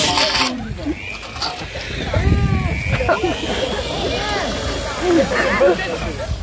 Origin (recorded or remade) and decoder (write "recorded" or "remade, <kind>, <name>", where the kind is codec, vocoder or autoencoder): recorded